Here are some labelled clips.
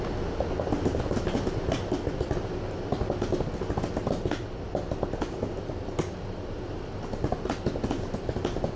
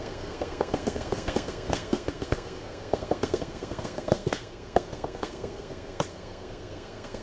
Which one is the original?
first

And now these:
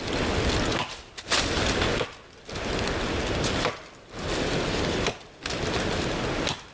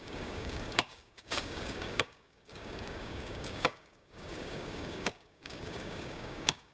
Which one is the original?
first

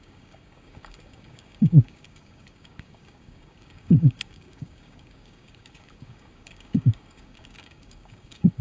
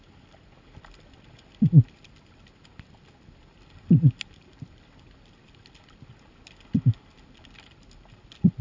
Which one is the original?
second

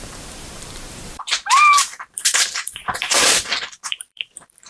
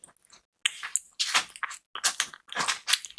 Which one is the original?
second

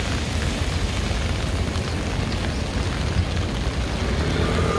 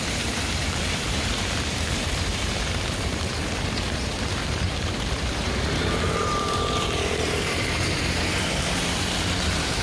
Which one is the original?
first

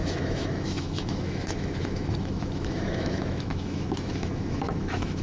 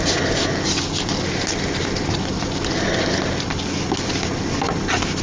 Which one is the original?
second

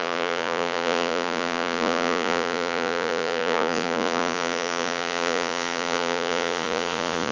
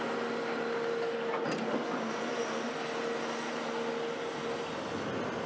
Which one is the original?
second